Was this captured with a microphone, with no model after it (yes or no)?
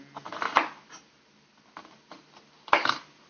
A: yes